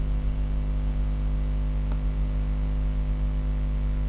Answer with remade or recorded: recorded